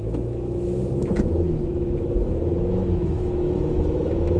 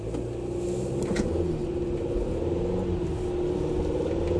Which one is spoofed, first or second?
first